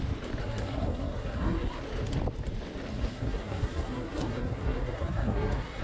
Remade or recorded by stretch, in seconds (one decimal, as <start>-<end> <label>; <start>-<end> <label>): 0.0-0.4 recorded; 0.4-1.8 remade; 1.8-2.9 recorded; 2.9-5.8 remade